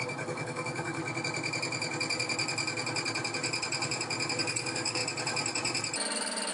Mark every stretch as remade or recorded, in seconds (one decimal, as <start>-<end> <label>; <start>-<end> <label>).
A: 0.0-1.0 remade; 1.0-4.4 recorded; 4.4-5.0 remade; 5.0-6.5 recorded